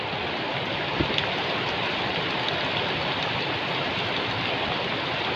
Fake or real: real